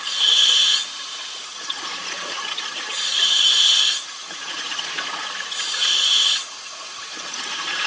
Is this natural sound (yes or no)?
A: no